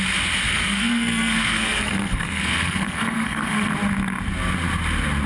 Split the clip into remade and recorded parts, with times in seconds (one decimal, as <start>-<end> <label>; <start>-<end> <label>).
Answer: 0.0-0.5 recorded; 0.5-3.7 remade; 3.7-5.3 recorded